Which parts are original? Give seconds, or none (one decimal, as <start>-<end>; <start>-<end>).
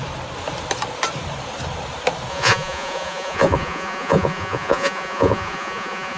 0.0-2.3